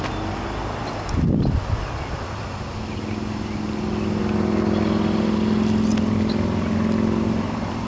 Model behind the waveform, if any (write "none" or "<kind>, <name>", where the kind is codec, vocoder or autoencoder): none